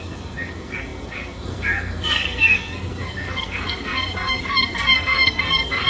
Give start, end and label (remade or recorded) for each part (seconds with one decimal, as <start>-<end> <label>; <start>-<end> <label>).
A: 0.0-5.9 remade